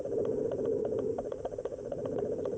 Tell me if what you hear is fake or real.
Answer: real